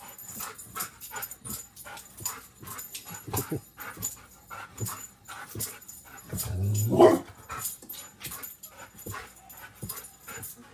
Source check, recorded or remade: recorded